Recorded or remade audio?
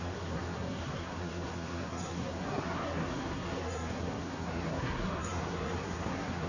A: remade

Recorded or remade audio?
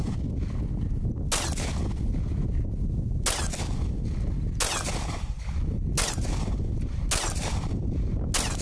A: recorded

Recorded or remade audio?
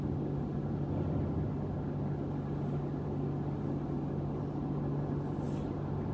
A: recorded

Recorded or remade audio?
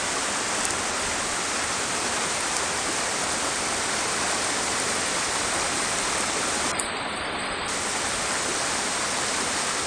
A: recorded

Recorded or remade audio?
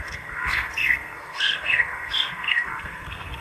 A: remade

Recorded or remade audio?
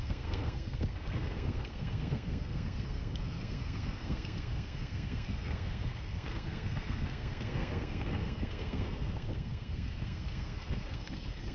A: remade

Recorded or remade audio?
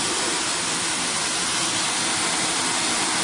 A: recorded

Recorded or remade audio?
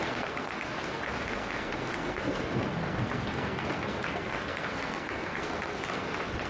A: remade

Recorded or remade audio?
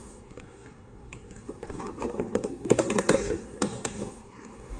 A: remade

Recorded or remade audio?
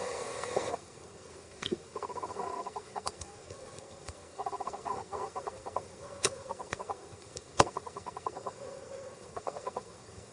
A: remade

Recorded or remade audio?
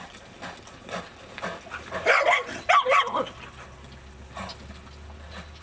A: recorded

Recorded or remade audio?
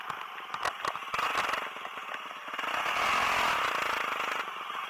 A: recorded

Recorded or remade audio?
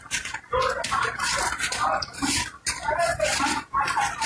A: recorded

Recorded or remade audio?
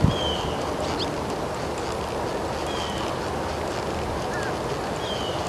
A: recorded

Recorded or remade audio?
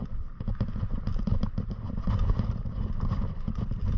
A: recorded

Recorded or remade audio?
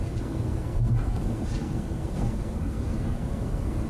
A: remade